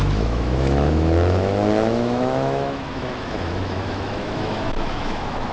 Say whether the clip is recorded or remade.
remade